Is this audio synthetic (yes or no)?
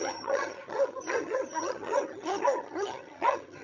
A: yes